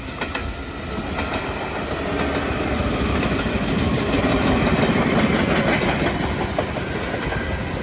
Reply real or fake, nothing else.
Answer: real